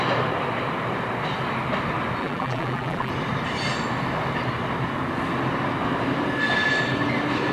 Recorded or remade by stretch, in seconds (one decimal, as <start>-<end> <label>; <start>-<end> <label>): 0.0-2.2 recorded; 2.2-3.1 remade; 3.1-7.5 recorded